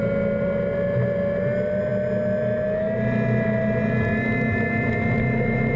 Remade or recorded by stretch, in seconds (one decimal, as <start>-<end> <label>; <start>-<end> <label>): 0.0-5.8 recorded